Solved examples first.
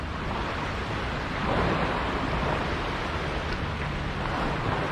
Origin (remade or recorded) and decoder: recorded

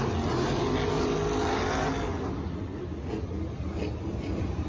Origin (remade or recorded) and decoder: recorded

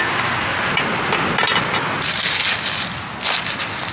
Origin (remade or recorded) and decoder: recorded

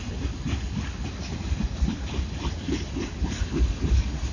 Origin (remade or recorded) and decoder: recorded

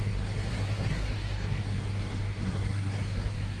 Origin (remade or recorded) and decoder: remade, codec, SNAC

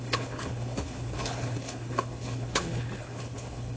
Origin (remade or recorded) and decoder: remade, codec, HILCodec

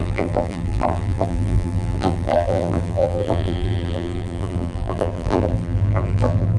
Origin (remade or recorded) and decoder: remade, vocoder, BigVGAN v2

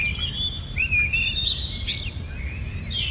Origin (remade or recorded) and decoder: recorded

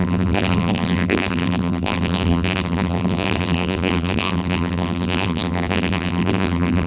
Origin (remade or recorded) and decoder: remade, vocoder, BigVGAN v2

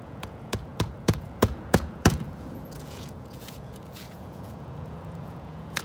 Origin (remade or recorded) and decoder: remade, vocoder, Vocos